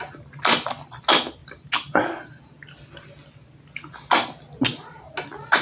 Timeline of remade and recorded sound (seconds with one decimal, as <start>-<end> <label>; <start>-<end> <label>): 0.0-5.6 recorded